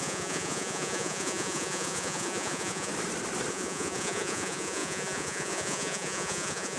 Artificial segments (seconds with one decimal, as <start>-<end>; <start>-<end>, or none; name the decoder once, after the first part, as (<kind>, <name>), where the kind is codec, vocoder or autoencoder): 0.0-2.9 (vocoder, Vocos); 3.5-6.8